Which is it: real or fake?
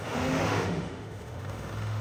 fake